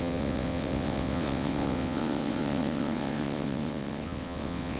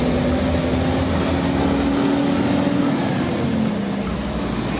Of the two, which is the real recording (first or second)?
second